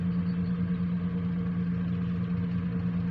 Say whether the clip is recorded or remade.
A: recorded